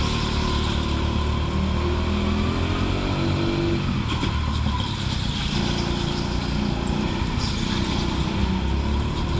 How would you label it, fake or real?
real